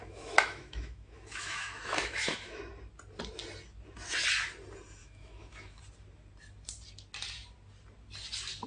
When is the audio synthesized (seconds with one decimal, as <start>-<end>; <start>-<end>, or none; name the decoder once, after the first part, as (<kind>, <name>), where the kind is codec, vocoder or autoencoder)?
0.0-2.6 (autoencoder, DAC-VAE); 5.0-5.8